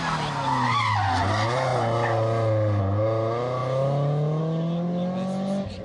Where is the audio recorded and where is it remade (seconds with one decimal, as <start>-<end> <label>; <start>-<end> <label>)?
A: 0.0-5.8 recorded